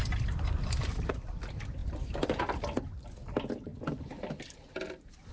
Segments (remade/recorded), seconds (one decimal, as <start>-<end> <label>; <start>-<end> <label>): 0.0-5.3 recorded